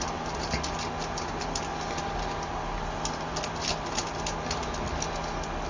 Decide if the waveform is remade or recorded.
recorded